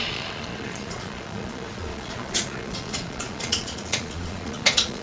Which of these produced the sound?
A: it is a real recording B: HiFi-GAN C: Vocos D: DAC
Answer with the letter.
C